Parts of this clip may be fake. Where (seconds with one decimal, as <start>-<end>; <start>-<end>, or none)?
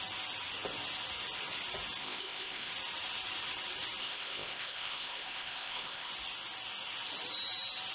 2.0-2.7; 4.0-6.1